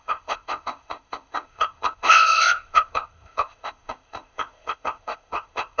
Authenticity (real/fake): fake